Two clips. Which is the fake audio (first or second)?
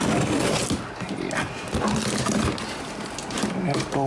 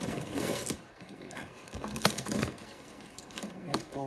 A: second